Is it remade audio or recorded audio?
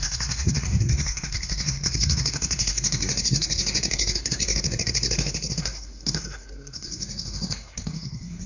remade